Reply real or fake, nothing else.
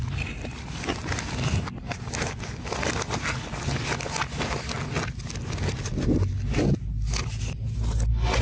real